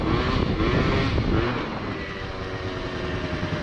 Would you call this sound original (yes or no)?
yes